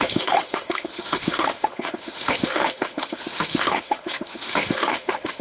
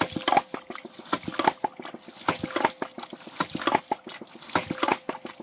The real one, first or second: second